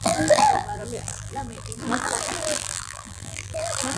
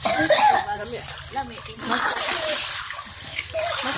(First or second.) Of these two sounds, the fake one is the first